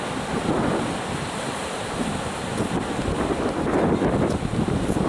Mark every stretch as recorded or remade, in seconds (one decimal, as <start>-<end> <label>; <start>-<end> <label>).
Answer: 0.0-5.1 recorded